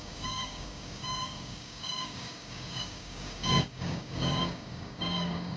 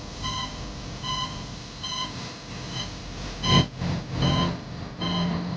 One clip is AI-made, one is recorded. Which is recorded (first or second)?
second